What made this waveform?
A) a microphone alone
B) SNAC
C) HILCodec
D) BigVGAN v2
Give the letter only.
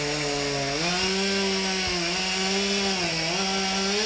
A